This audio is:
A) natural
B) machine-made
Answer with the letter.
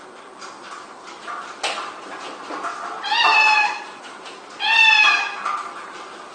A